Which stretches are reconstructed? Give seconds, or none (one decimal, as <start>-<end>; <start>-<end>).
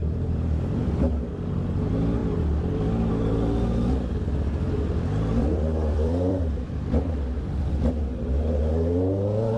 0.0-1.1; 5.4-7.1